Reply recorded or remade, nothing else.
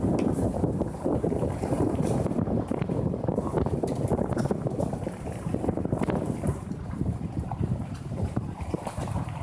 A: remade